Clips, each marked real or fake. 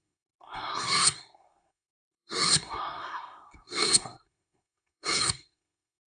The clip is fake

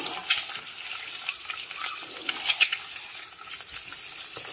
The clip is real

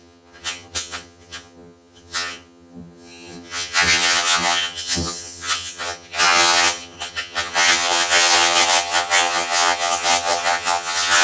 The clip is fake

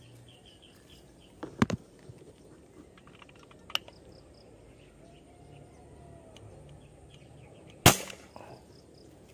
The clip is real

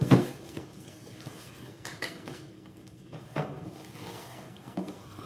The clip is fake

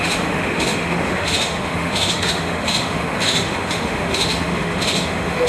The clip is fake